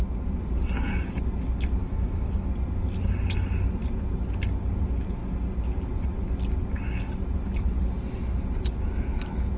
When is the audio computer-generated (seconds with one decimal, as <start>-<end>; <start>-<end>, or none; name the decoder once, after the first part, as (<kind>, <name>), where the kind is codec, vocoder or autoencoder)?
1.8-2.5 (autoencoder, DAC-VAE)